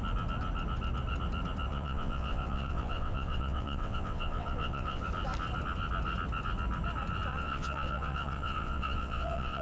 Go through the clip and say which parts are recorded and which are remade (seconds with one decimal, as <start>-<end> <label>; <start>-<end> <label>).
0.0-1.7 recorded; 1.7-5.0 remade; 5.0-7.3 recorded; 7.3-9.6 remade